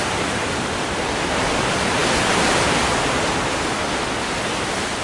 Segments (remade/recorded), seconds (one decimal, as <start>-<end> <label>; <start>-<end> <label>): 0.0-1.6 remade; 1.6-5.0 recorded